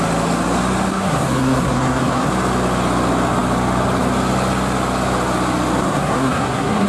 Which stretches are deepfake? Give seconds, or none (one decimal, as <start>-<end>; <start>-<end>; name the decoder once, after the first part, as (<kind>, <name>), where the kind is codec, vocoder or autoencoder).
0.9-2.3 (codec, SNAC); 5.8-6.9